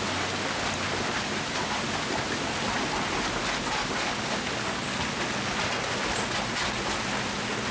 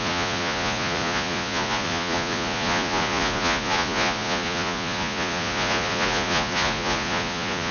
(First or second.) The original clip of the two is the first